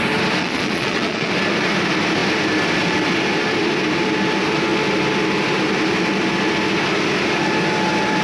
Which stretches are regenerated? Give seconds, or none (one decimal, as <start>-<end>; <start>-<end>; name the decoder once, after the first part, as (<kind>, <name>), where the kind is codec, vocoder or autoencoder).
0.4-1.3 (vocoder, Vocos)